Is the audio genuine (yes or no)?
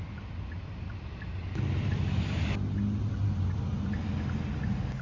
yes